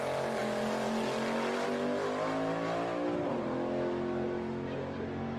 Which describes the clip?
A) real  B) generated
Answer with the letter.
A